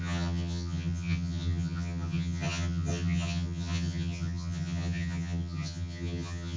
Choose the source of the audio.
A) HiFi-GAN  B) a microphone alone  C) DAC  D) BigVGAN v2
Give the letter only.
A